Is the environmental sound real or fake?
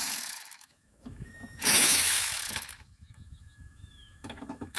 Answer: fake